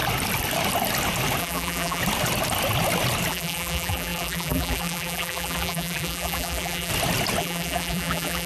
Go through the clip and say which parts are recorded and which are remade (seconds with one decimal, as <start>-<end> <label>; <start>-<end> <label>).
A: 0.0-1.4 recorded; 1.4-2.0 remade; 2.0-3.3 recorded; 3.3-6.9 remade; 6.9-7.4 recorded; 7.4-8.5 remade